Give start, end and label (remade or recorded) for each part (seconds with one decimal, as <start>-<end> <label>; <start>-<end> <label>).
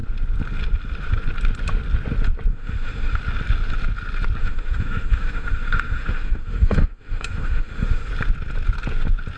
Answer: 0.0-2.5 recorded; 2.5-3.2 remade; 3.2-4.4 recorded; 4.4-8.1 remade; 8.1-9.4 recorded